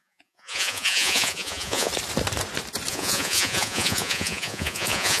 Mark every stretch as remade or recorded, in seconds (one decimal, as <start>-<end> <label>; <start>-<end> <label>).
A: 0.0-1.9 remade; 1.9-2.9 recorded; 2.9-5.2 remade